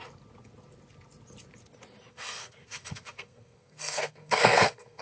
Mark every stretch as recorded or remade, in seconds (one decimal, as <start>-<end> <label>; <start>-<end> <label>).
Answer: 0.0-2.1 recorded; 2.1-5.0 remade